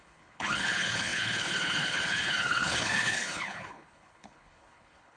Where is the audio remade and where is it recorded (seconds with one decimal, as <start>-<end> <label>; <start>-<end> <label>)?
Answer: 0.0-5.2 remade

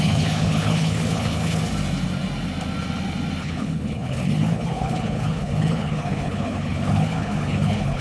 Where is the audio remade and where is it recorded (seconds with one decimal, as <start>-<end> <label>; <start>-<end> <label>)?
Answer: 0.0-1.6 remade; 1.6-3.4 recorded; 3.4-8.0 remade

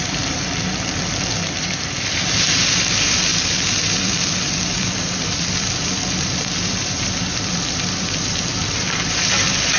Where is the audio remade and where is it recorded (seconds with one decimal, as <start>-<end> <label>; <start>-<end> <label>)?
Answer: 0.0-3.3 remade; 3.3-4.0 recorded; 4.0-9.8 remade

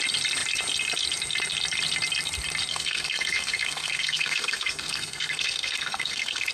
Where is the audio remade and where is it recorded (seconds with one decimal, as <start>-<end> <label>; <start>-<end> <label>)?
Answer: 0.0-2.7 recorded; 2.7-6.5 remade

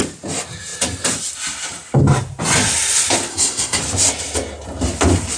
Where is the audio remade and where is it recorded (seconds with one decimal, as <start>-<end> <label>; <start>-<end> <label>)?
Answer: 0.0-3.3 recorded; 3.3-3.8 remade; 3.8-5.4 recorded

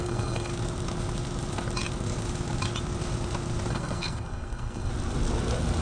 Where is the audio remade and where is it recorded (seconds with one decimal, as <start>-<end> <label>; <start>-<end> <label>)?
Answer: 0.0-0.5 remade; 0.5-3.7 recorded; 3.7-4.9 remade; 4.9-5.8 recorded

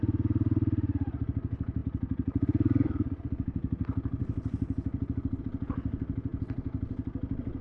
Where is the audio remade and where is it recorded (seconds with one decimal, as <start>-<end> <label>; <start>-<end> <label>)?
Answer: 0.0-7.6 recorded

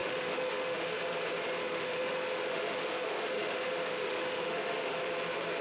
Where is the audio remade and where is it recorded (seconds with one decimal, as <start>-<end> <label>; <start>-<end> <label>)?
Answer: 0.0-1.0 remade; 1.0-1.6 recorded; 1.6-5.0 remade; 5.0-5.6 recorded